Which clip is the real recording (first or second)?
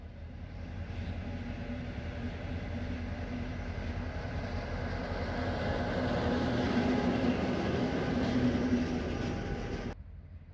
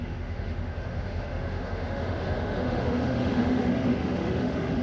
first